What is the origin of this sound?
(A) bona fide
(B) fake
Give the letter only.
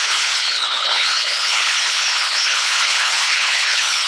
B